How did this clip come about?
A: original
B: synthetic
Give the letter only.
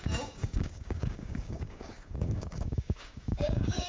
B